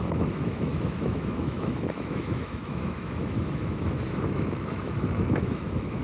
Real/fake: fake